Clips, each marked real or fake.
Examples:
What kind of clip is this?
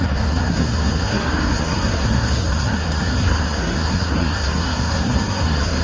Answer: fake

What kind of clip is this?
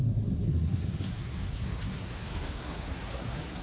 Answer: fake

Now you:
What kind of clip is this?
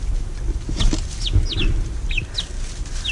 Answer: real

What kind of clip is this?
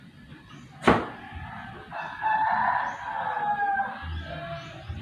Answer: real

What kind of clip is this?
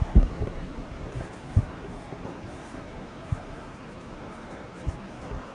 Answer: fake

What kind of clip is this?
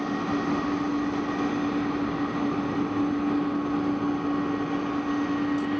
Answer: real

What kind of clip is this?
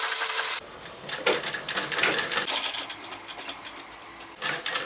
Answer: real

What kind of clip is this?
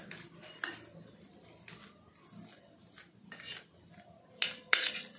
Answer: real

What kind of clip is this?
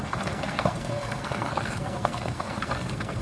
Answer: fake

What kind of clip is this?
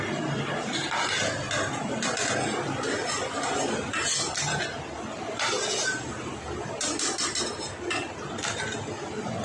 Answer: real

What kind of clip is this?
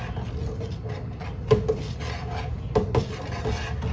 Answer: real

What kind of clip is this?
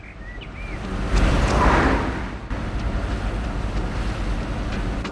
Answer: real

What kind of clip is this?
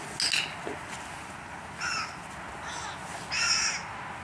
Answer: real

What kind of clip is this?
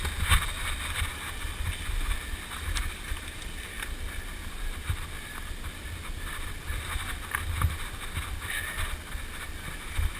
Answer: real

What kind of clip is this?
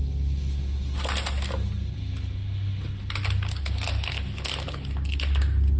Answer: real